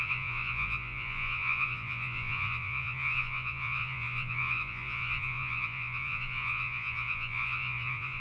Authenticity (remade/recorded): remade